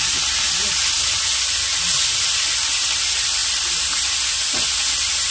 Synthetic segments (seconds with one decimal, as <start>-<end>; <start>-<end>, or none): none